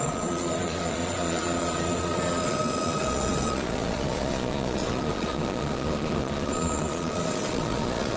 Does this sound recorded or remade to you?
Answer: remade